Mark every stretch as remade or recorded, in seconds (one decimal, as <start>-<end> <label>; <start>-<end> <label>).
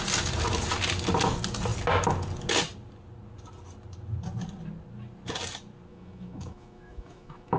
0.0-5.9 recorded; 5.9-7.6 remade